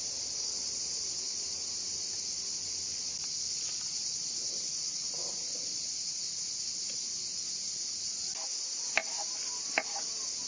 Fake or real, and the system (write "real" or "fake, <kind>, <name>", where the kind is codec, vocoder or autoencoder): real